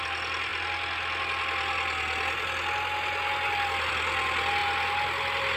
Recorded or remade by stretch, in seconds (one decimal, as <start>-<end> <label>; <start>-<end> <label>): 0.0-5.6 recorded